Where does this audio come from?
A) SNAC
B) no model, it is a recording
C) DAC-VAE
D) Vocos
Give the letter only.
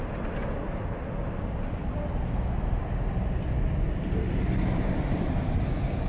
B